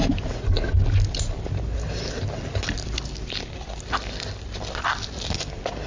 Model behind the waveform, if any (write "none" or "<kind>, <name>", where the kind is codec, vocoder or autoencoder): none